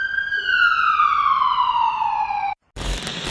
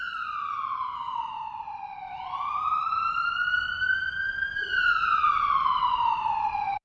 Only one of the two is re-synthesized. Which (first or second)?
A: second